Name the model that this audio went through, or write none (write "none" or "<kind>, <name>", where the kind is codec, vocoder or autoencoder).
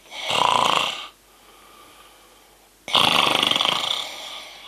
none